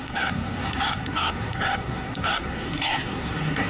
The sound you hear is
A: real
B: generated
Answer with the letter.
B